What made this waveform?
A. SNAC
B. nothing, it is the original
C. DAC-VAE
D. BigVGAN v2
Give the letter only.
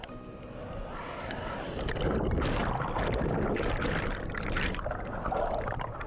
B